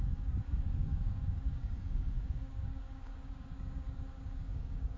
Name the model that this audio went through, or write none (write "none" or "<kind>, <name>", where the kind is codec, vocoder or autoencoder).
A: codec, DAC